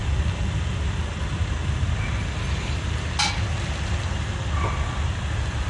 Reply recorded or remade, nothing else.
recorded